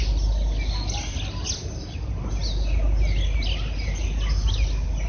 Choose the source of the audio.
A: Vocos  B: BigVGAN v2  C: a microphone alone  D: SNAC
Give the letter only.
C